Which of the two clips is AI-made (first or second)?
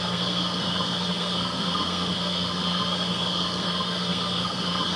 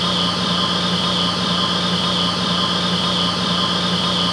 first